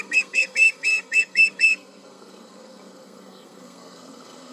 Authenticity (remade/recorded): remade